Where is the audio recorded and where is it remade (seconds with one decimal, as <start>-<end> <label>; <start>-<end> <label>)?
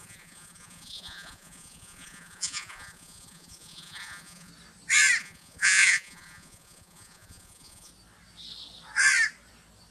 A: 0.0-4.5 remade; 4.5-5.2 recorded; 5.2-7.9 remade; 7.9-9.9 recorded